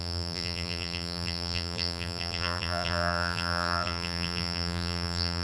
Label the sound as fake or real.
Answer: fake